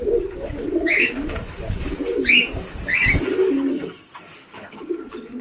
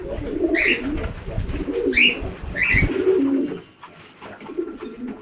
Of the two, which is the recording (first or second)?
second